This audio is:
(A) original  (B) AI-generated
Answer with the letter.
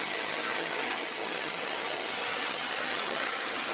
B